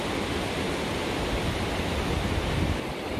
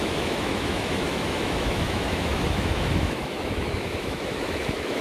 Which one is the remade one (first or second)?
second